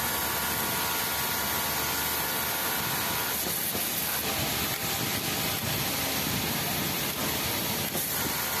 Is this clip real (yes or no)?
yes